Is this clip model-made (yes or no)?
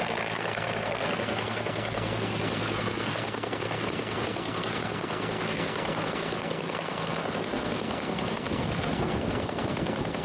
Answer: yes